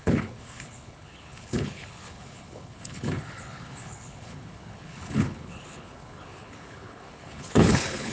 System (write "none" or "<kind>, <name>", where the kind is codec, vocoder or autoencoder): codec, HILCodec